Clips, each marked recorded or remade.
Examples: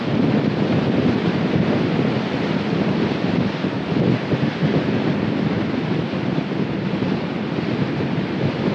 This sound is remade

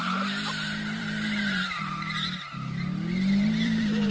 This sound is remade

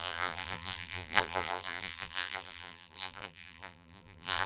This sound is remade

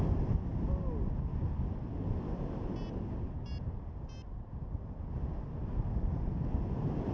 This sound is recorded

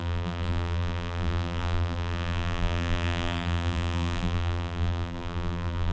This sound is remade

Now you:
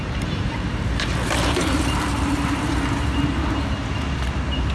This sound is remade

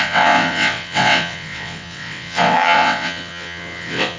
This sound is remade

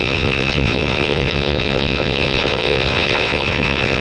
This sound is remade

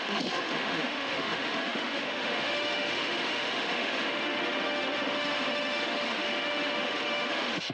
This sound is remade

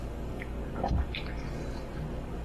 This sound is remade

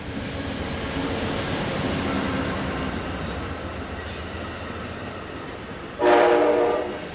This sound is recorded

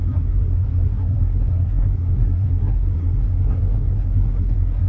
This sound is remade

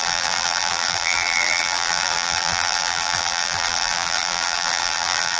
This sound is remade